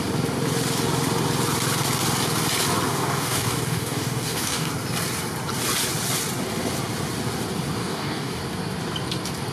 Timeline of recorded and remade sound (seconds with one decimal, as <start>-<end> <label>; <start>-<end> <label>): 0.0-2.9 recorded; 2.9-4.7 remade; 4.7-7.8 recorded; 7.8-8.4 remade; 8.4-9.5 recorded